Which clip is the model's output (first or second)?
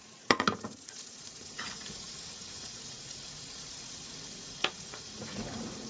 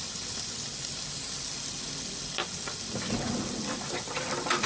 first